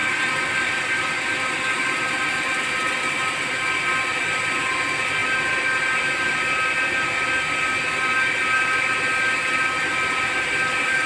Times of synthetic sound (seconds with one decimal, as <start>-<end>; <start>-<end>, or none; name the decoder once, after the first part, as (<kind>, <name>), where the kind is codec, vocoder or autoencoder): none